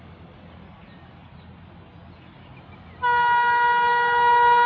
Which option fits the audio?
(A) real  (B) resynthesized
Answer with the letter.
A